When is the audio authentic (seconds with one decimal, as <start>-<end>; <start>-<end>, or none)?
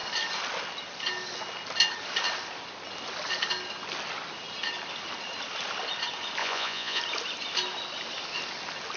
0.0-6.4; 7.0-9.0